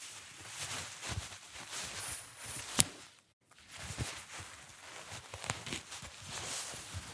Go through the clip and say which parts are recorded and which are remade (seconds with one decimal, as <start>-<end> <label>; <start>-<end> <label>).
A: 0.0-2.0 recorded; 2.0-2.6 remade; 2.6-7.1 recorded